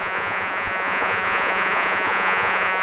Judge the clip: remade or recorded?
remade